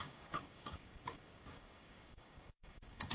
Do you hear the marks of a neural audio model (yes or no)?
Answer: yes